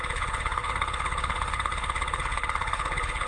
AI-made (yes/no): yes